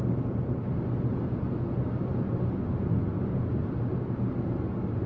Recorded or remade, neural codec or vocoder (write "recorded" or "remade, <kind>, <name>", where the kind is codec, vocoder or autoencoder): recorded